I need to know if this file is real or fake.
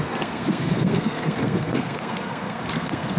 fake